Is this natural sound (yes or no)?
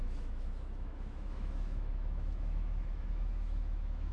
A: no